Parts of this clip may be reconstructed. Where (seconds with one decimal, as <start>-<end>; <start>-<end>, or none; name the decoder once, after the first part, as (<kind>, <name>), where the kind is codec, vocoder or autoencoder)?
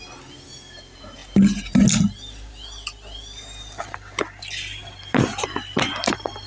4.8-6.5 (vocoder, BigVGAN v2)